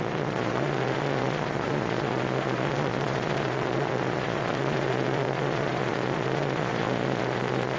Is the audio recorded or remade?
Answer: remade